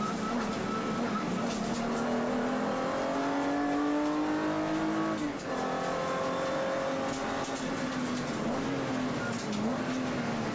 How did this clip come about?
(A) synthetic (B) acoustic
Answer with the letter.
B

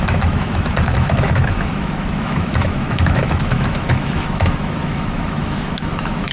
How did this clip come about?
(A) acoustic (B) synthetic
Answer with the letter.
B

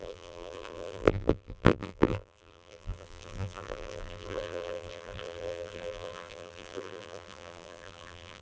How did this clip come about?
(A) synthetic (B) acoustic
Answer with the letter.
A